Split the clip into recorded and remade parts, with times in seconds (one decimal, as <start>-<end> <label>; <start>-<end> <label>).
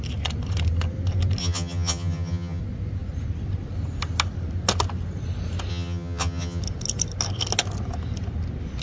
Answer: 0.0-1.4 recorded; 1.4-2.6 remade; 2.6-5.7 recorded; 5.7-6.6 remade; 6.6-8.8 recorded